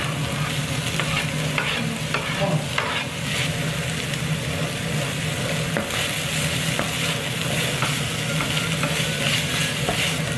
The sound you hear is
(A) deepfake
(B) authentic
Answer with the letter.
B